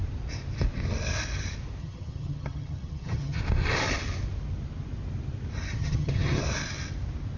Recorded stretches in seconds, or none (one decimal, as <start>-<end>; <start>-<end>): 0.0-1.8; 3.4-5.7; 6.4-7.4